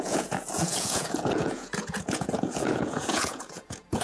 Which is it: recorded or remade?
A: remade